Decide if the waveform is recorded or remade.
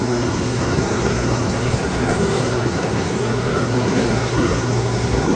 remade